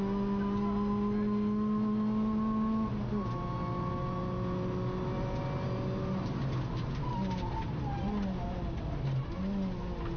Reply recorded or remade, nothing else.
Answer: recorded